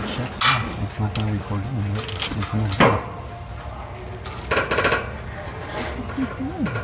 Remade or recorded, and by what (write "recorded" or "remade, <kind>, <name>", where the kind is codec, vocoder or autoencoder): recorded